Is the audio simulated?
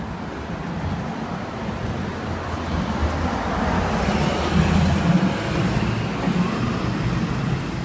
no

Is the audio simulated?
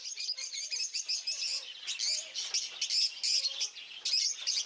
no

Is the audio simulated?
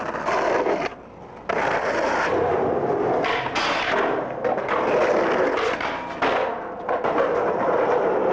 no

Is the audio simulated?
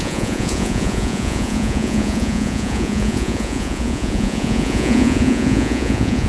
yes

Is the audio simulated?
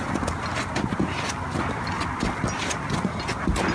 no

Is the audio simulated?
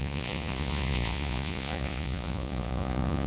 yes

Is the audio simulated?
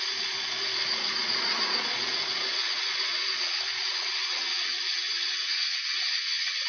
yes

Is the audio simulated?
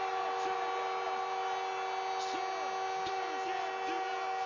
no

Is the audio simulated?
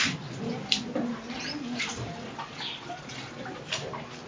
no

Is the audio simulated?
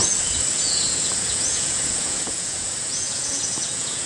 yes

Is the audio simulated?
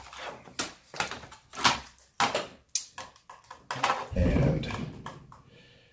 no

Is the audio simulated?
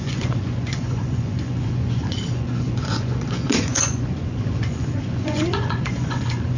yes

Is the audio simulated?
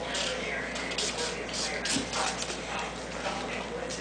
no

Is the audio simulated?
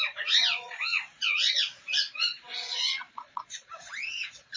yes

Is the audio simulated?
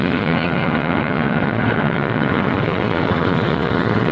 yes